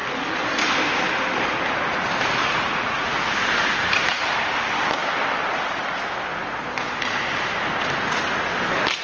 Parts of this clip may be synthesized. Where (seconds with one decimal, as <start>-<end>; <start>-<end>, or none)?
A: 2.4-3.3